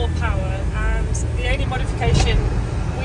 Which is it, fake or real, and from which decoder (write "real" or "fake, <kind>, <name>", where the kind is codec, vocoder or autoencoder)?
real